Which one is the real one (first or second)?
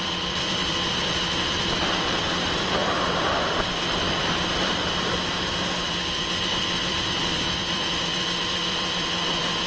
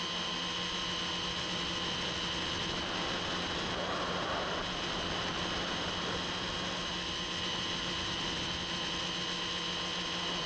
second